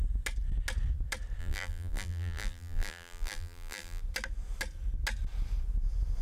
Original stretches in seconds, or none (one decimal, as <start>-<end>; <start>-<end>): 0.0-1.4; 4.0-6.2